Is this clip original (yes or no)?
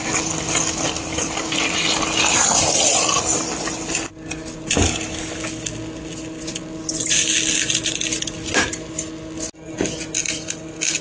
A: yes